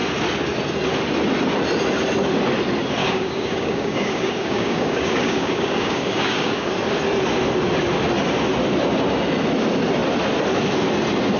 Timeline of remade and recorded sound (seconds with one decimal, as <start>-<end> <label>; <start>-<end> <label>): 0.0-3.0 recorded; 3.0-6.7 remade; 6.7-11.4 recorded